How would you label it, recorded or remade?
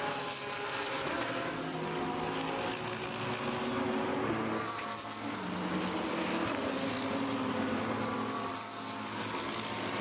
recorded